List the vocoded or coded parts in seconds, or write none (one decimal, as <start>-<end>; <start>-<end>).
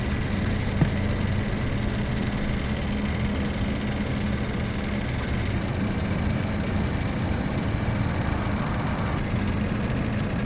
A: 5.7-10.5